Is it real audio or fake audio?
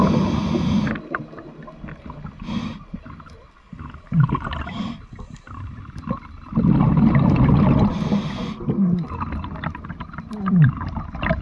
real